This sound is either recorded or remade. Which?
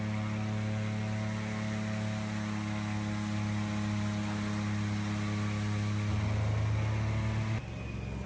recorded